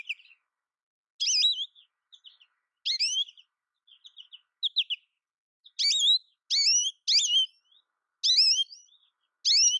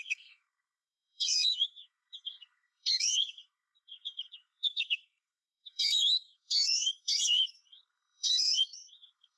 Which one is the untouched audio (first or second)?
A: first